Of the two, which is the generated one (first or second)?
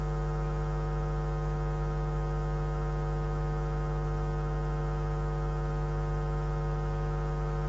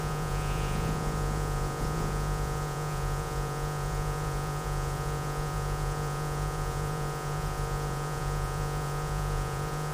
second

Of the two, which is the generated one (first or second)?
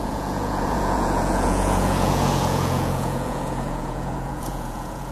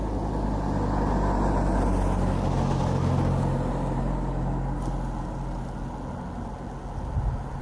first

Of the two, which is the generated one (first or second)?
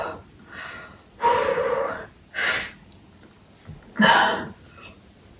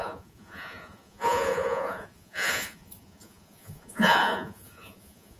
second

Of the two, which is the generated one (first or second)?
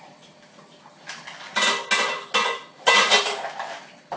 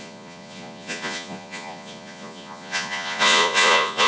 second